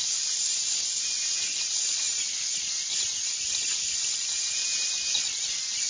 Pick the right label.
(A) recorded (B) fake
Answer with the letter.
A